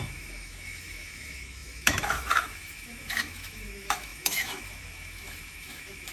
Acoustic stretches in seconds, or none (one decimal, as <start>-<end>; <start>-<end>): none